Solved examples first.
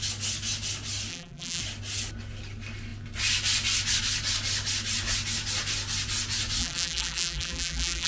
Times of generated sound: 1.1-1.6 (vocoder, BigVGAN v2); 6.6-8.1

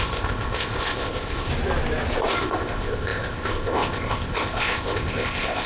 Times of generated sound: 0.0-1.5 (codec, ZipCodec); 2.3-5.7